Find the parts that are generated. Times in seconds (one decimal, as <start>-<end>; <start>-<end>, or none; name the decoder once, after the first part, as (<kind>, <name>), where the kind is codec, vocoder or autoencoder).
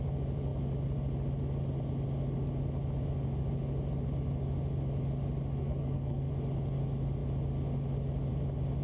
5.6-6.3 (codec, SNAC)